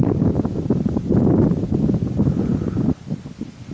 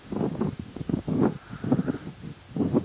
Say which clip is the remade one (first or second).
second